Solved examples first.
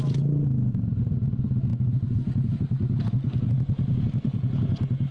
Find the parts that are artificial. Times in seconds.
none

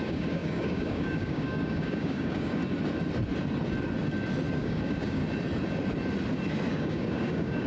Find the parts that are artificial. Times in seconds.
0.0-2.6 (codec, DAC); 4.5-5.2; 6.7-7.7